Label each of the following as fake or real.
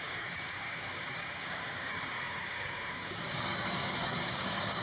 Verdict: fake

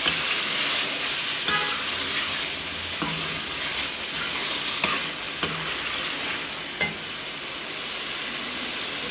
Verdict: real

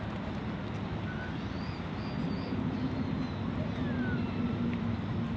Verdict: real